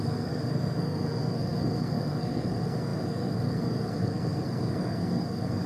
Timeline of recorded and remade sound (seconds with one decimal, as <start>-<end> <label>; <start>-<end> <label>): 0.0-5.7 remade